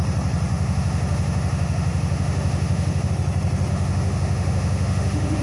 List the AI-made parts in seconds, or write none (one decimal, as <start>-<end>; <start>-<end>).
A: 0.5-3.1; 3.7-5.4